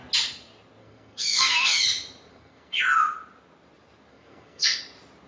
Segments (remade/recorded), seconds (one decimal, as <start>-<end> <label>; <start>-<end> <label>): 0.0-0.8 recorded; 0.8-1.8 remade; 1.8-2.3 recorded; 2.3-2.8 remade; 2.8-4.1 recorded; 4.1-4.8 remade; 4.8-5.3 recorded